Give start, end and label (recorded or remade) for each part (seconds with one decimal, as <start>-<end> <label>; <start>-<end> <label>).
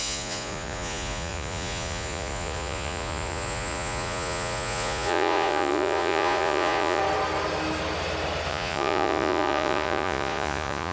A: 0.0-7.0 remade; 7.0-8.5 recorded; 8.5-10.9 remade